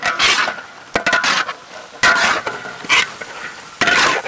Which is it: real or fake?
real